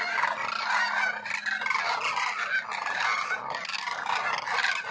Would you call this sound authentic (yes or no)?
yes